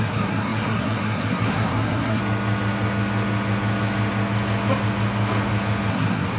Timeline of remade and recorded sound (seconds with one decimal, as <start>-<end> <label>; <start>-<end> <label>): 0.0-2.2 remade; 2.2-5.9 recorded; 5.9-6.4 remade